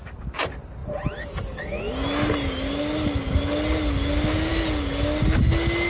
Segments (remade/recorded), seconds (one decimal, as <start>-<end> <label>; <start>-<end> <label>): 0.0-5.9 recorded